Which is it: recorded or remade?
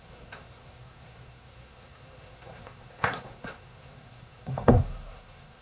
remade